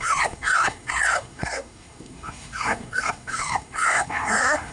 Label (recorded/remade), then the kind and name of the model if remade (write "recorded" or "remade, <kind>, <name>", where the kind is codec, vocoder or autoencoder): remade, codec, SNAC